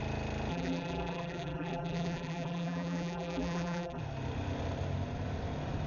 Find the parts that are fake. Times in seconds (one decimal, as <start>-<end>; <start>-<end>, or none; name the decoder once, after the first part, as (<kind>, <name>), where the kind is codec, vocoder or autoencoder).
0.5-4.0 (vocoder, BigVGAN v2)